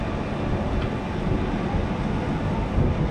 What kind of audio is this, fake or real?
real